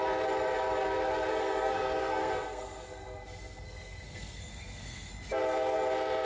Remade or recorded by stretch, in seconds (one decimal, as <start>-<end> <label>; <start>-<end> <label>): 0.0-1.3 recorded; 1.3-5.1 remade; 5.1-6.3 recorded